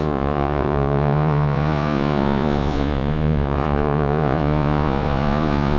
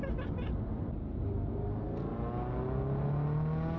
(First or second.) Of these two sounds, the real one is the second